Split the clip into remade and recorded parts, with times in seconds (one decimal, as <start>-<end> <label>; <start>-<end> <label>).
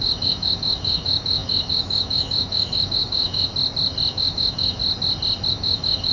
0.0-3.5 remade; 3.5-4.1 recorded; 4.1-4.8 remade; 4.8-5.5 recorded; 5.5-6.1 remade